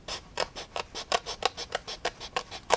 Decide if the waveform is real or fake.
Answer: real